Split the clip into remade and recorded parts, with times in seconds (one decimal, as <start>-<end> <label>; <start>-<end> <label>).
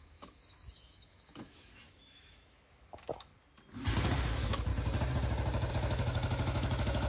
0.0-3.3 remade; 3.3-4.3 recorded; 4.3-4.7 remade; 4.7-5.7 recorded; 5.7-7.1 remade